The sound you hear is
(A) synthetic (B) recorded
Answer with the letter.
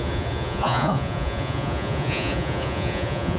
A